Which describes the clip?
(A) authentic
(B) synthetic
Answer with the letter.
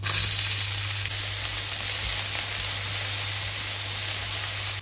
A